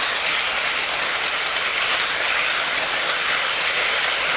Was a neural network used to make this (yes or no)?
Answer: no